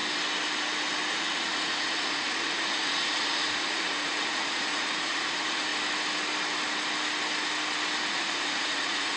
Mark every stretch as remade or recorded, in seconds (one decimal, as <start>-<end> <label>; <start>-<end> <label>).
0.0-1.1 recorded; 1.1-5.7 remade; 5.7-8.1 recorded; 8.1-9.2 remade